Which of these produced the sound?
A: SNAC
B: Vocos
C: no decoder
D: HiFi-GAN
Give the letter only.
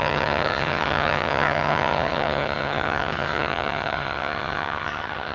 D